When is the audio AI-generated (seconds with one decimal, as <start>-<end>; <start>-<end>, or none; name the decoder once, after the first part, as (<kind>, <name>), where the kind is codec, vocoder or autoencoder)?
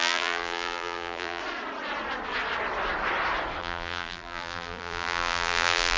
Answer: 0.0-1.4 (vocoder, BigVGAN v2); 3.6-6.0